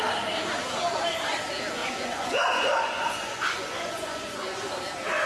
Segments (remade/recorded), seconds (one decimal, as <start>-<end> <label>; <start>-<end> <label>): 0.0-1.8 recorded; 1.8-4.6 remade; 4.6-5.3 recorded